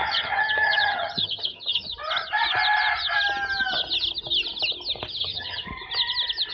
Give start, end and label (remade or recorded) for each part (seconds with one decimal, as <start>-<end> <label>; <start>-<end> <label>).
0.0-1.9 remade; 1.9-5.2 recorded; 5.2-5.7 remade; 5.7-6.5 recorded